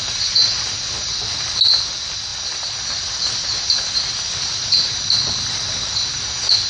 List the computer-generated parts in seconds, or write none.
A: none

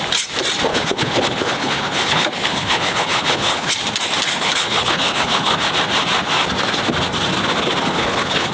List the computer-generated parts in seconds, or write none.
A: 0.7-3.7 (codec, HILCodec); 4.3-5.7; 7.8-8.5

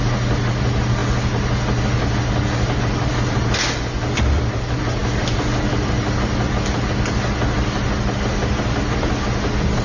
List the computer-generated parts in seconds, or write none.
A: none

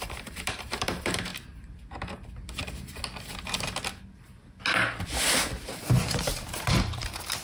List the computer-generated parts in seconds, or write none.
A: 0.0-1.3 (vocoder, BigVGAN v2); 5.7-7.4